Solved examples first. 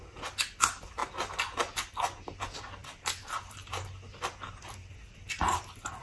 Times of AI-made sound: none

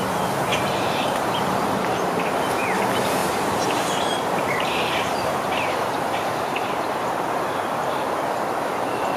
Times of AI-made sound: 0.5-2.8 (vocoder, BigVGAN v2); 3.2-7.9

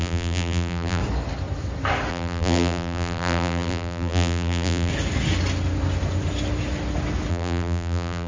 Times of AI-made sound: 0.0-1.0 (vocoder, BigVGAN v2); 2.1-4.9; 7.3-8.3